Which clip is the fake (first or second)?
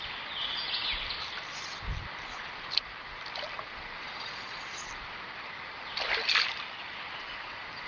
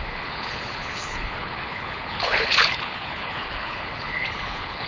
second